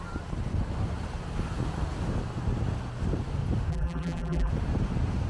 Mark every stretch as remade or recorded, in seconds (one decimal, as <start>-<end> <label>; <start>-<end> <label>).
0.0-3.7 recorded; 3.7-4.5 remade; 4.5-5.3 recorded